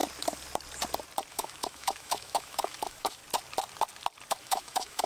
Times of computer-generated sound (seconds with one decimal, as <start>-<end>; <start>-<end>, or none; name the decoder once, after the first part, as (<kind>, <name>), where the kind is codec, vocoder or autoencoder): 1.3-3.2 (autoencoder, DAC-VAE); 4.4-5.1